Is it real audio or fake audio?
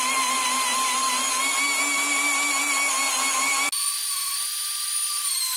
real